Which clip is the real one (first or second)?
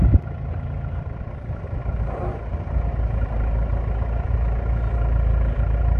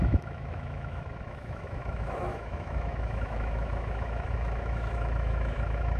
first